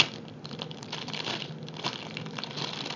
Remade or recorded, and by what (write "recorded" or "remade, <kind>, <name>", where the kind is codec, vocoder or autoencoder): remade, vocoder, BigVGAN v2